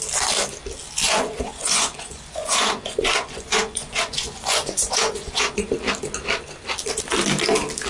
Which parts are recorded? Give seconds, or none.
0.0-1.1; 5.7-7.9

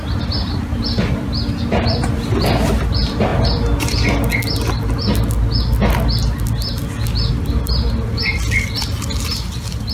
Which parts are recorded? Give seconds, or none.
3.3-7.3

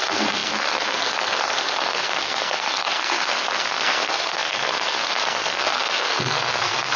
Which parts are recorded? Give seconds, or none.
none

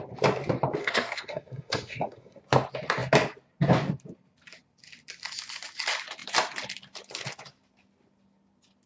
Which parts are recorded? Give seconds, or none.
0.0-0.8; 2.4-8.9

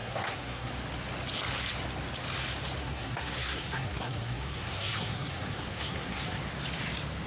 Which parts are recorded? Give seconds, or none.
0.7-2.8; 6.4-7.3